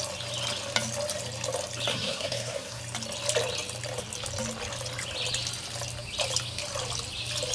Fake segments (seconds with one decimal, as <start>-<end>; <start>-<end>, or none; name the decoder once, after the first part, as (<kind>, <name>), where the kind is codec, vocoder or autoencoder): 1.9-2.8 (codec, SNAC)